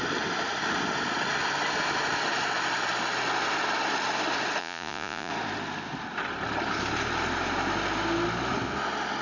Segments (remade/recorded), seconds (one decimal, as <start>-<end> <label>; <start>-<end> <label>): 0.0-4.6 recorded; 4.6-5.3 remade; 5.3-9.2 recorded